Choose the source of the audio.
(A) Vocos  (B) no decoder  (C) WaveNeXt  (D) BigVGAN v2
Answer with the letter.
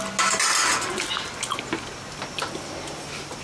B